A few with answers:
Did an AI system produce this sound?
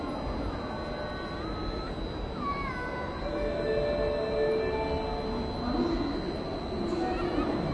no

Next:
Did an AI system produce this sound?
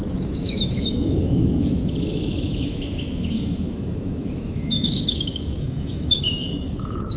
yes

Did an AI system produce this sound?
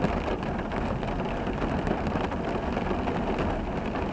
no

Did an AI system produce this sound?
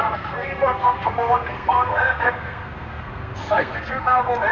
yes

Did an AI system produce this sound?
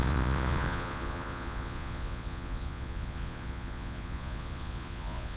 yes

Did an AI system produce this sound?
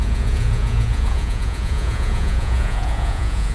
yes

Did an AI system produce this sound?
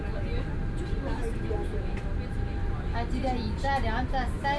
no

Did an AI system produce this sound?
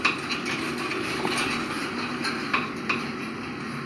no